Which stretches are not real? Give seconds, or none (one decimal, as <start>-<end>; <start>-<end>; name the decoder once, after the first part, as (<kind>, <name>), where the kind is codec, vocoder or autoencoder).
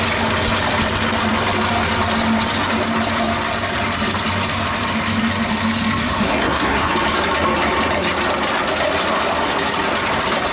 6.0-6.9 (codec, SNAC)